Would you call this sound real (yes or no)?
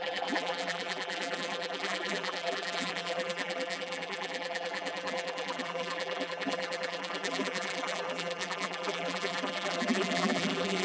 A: no